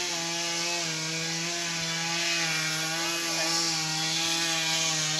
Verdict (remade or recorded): recorded